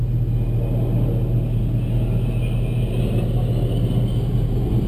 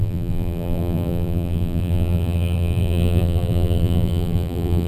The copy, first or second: second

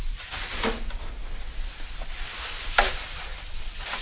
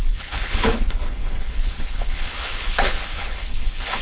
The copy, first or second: second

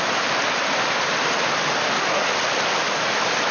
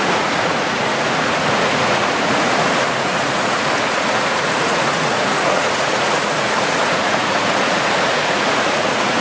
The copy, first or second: second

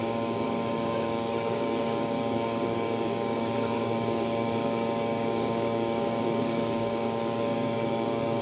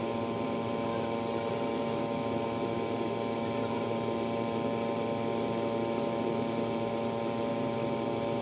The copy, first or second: first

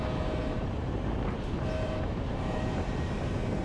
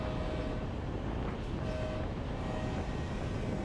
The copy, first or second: first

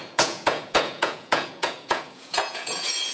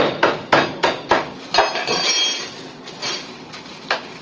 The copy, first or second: first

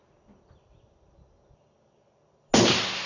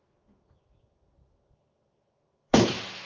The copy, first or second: second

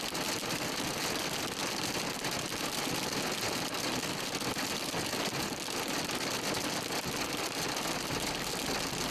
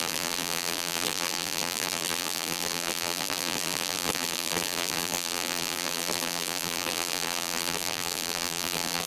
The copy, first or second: second